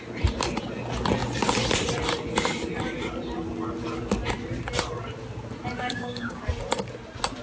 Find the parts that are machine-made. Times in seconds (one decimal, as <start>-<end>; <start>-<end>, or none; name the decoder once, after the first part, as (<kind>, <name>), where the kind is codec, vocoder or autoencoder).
5.8-6.4 (codec, DAC)

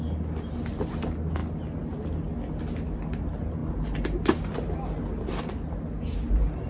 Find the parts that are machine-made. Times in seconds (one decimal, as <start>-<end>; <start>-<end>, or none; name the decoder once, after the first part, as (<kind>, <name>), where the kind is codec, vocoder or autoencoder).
none

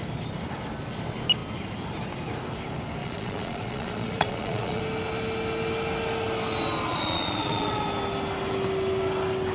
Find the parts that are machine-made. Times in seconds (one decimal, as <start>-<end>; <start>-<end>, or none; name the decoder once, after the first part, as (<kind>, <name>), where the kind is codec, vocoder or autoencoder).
3.0-4.8 (vocoder, Vocos); 6.9-7.8

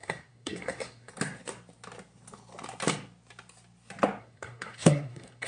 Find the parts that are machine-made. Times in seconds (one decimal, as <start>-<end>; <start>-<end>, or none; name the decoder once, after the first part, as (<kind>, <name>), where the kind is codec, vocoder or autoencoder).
0.0-1.1 (codec, SNAC); 4.2-5.5

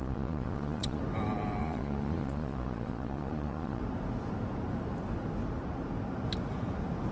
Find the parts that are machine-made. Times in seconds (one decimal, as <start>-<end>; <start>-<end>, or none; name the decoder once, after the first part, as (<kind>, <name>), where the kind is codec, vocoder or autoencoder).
0.0-1.0 (vocoder, Vocos); 1.6-3.8

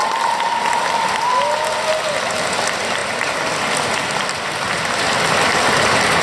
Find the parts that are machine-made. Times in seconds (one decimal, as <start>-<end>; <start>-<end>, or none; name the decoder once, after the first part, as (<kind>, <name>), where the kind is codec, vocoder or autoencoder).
none

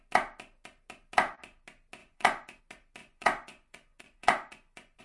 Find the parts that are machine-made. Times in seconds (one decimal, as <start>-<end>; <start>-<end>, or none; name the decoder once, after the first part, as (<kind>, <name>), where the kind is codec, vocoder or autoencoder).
2.0-2.6 (vocoder, Vocos); 3.0-5.0

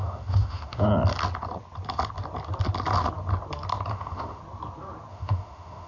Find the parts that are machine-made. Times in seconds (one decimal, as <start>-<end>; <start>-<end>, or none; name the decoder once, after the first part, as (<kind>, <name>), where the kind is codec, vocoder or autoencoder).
0.0-0.9 (autoencoder, DAC-VAE); 3.9-4.4; 5.1-5.9